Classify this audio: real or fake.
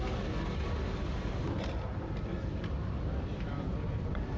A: real